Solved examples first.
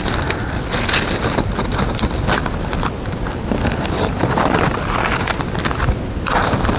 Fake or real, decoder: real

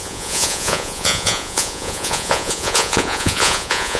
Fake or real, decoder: fake, vocoder, Vocos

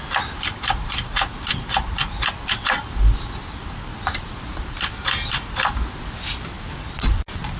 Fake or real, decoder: real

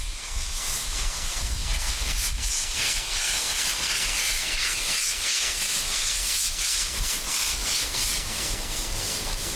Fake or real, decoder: fake, codec, SNAC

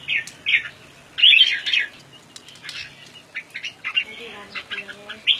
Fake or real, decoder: real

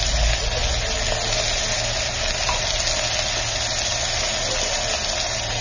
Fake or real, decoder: real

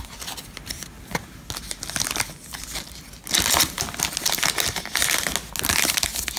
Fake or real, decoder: real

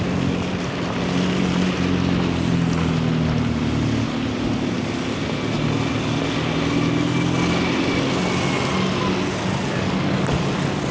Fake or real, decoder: real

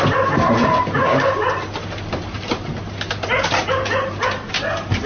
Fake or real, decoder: real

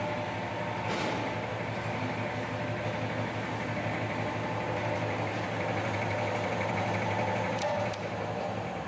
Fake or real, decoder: real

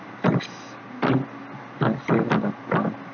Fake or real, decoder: real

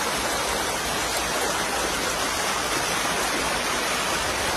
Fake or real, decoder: real